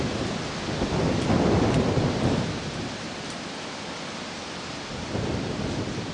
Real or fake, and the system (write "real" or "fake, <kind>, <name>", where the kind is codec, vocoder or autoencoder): fake, vocoder, BigVGAN v2